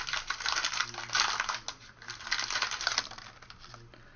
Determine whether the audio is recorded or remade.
recorded